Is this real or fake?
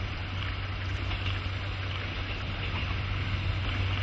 real